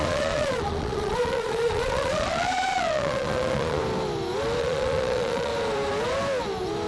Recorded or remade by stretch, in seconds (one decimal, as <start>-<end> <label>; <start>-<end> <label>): 0.0-3.8 remade; 3.8-4.6 recorded; 4.6-5.5 remade; 5.5-6.9 recorded

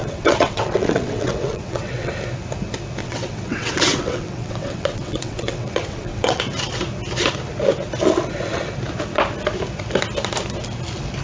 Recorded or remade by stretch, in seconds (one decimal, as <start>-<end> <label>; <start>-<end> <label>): 0.0-2.1 remade; 2.1-3.0 recorded; 3.0-6.4 remade; 6.4-11.2 recorded

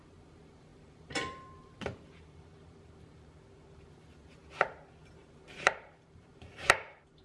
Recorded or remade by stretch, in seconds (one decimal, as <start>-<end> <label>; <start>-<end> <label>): 0.0-4.4 remade; 4.4-5.1 recorded; 5.1-7.2 remade

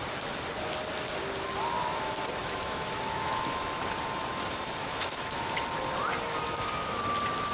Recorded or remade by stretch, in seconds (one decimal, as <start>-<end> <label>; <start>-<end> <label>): 0.0-2.4 recorded; 2.4-3.6 remade; 3.6-4.8 recorded; 4.8-5.5 remade; 5.5-7.5 recorded

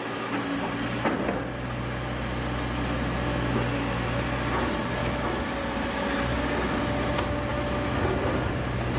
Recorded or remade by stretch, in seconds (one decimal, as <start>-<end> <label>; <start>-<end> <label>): 0.0-5.0 recorded; 5.0-5.5 remade; 5.5-9.0 recorded